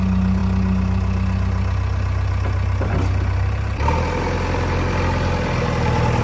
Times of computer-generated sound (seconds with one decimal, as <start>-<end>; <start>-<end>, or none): none